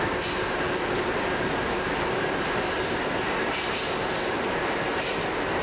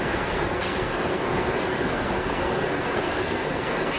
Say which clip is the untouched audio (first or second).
first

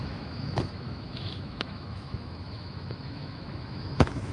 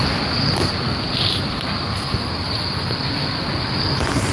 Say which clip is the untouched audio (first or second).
second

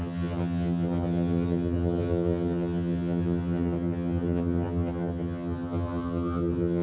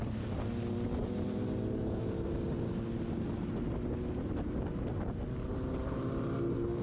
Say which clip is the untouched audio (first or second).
second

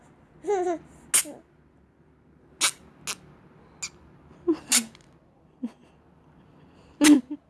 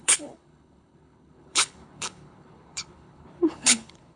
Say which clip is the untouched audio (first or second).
first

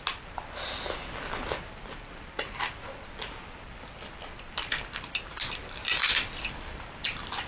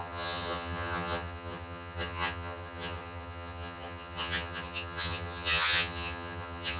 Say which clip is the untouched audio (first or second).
first